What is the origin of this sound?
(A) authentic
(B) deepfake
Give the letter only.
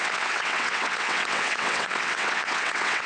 B